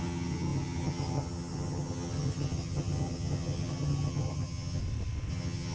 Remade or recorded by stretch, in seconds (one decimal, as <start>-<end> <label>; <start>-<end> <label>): 0.0-4.8 remade; 4.8-5.3 recorded; 5.3-5.7 remade